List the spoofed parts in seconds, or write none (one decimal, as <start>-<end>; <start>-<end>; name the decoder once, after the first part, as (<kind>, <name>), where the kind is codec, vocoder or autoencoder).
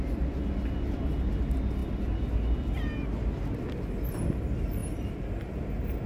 none